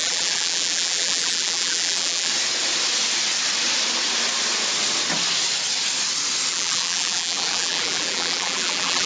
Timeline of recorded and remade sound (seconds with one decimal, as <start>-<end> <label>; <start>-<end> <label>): 0.0-2.3 remade; 2.3-6.5 recorded; 6.5-9.1 remade